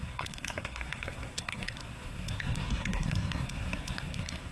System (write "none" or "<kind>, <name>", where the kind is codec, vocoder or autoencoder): codec, SNAC